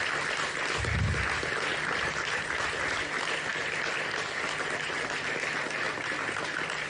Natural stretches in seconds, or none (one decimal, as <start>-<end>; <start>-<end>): 0.0-6.9